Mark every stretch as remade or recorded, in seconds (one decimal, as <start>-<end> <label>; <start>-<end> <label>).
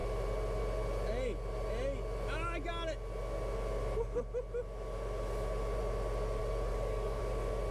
0.0-6.4 recorded; 6.4-7.2 remade; 7.2-7.7 recorded